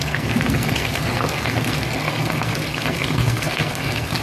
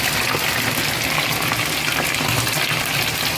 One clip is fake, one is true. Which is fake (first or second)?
first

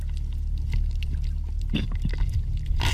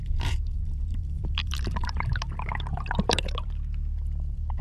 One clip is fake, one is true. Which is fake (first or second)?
second